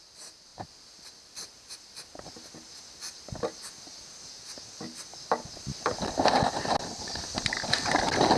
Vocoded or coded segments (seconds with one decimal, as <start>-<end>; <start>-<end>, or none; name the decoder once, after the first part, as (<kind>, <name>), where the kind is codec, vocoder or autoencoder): none